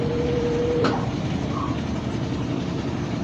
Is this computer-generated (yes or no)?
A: yes